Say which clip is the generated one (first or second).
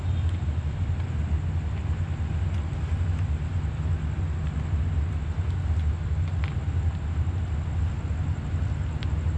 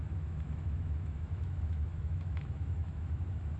second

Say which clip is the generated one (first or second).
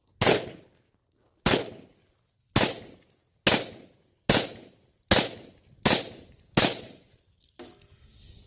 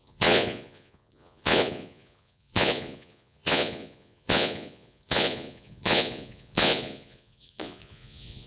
second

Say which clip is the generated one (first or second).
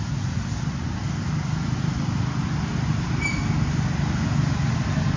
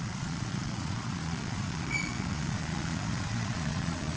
second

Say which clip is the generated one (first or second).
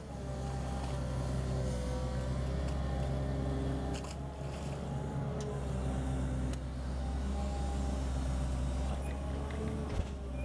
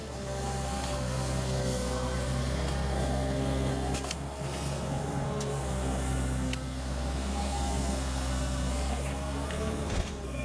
second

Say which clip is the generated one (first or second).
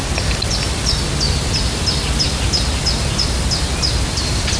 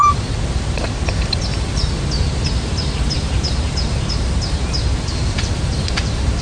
second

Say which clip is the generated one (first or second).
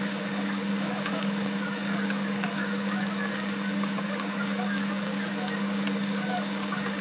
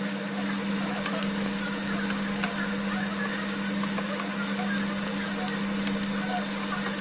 first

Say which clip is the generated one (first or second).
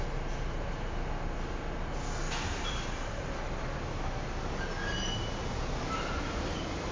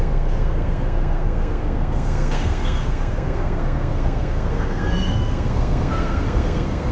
second